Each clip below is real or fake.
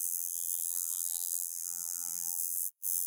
fake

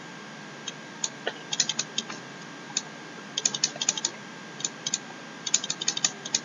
real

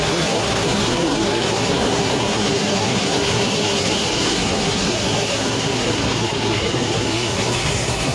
fake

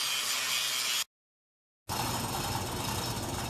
real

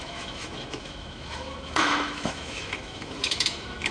fake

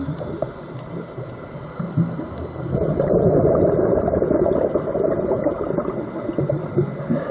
fake